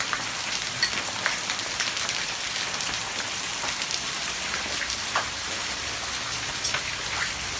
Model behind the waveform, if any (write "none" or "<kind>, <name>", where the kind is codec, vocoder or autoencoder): none